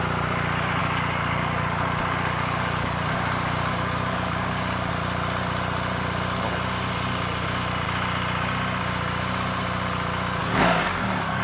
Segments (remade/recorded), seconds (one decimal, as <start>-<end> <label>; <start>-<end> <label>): 0.0-0.8 recorded; 0.8-4.9 remade; 4.9-10.4 recorded; 10.4-11.4 remade